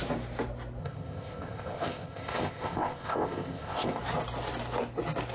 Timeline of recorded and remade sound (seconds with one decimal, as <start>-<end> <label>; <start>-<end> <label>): 0.0-0.8 recorded; 0.8-4.0 remade; 4.0-5.3 recorded